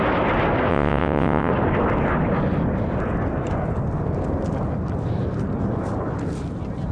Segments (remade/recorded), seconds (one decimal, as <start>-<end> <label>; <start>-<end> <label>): 0.0-0.7 recorded; 0.7-1.5 remade; 1.5-6.9 recorded